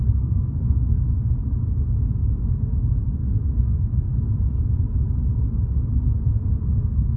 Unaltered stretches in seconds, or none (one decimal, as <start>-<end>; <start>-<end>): 1.4-2.3; 4.1-5.9